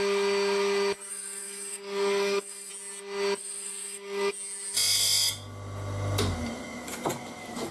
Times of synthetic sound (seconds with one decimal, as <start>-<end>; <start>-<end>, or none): 1.1-2.7; 3.4-4.3